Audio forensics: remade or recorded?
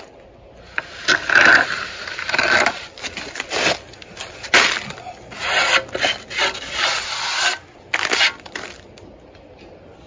recorded